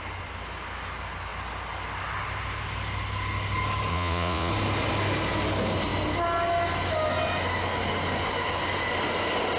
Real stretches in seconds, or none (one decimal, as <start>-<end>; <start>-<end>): 0.0-3.9; 4.5-9.6